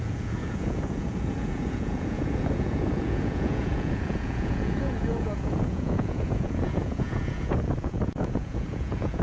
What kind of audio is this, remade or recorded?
remade